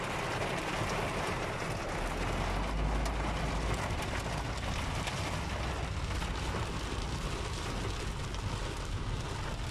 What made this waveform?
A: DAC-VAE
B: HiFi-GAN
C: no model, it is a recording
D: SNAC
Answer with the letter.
C